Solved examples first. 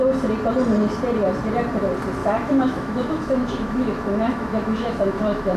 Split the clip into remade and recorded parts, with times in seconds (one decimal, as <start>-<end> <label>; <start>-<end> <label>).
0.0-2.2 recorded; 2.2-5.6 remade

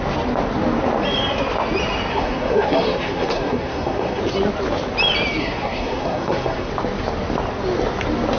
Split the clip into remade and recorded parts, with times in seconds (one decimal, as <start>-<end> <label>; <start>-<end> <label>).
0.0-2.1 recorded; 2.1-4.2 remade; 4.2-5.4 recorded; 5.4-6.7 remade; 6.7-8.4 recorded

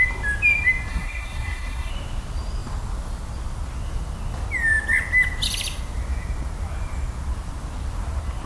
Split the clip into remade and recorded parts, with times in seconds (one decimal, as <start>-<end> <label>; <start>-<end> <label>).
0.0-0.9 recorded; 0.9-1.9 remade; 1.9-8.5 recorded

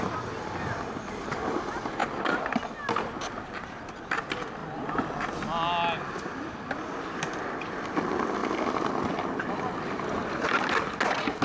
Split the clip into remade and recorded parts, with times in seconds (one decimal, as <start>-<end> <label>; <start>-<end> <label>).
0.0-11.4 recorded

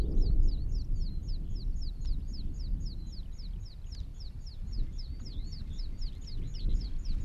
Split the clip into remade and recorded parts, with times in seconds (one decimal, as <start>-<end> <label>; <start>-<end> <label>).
0.0-4.1 recorded; 4.1-6.0 remade; 6.0-6.5 recorded; 6.5-7.2 remade